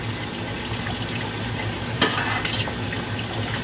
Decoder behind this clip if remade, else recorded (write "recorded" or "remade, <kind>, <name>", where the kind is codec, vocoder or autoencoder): recorded